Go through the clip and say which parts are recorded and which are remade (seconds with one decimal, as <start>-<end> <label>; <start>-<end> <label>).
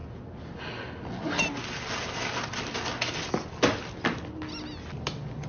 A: 0.0-5.5 recorded